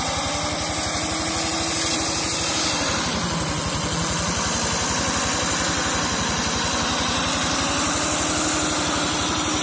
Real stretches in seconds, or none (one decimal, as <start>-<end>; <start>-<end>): 0.0-9.6